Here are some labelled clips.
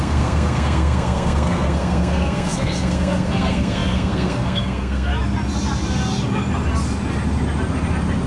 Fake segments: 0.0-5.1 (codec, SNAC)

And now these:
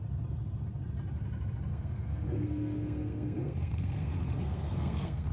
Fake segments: 1.7-5.3 (codec, SNAC)

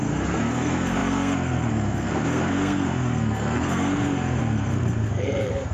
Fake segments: 0.0-5.7 (codec, SNAC)

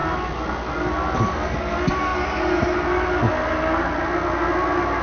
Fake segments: none

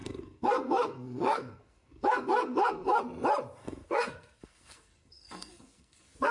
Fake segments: 0.0-3.0 (codec, SNAC); 3.6-6.3

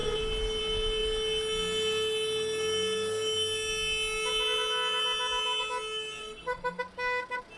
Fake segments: 6.2-6.8 (codec, SNAC)

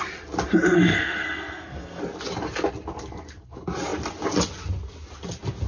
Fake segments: 0.9-2.0 (codec, SNAC)